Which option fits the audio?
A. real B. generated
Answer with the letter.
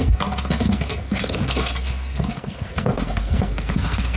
B